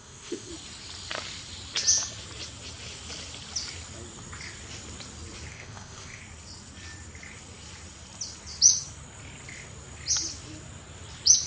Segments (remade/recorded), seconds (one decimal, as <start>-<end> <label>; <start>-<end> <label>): 0.0-0.5 remade; 0.5-5.5 recorded; 5.5-6.2 remade; 6.2-11.5 recorded